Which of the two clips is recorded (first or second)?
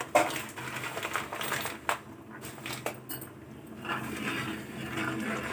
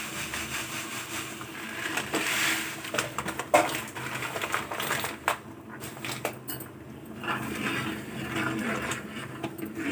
first